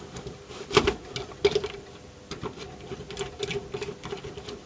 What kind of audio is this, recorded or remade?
recorded